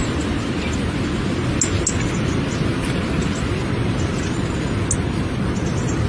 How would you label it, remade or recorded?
recorded